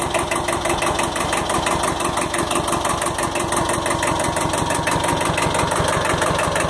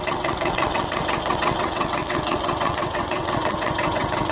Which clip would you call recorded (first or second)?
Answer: first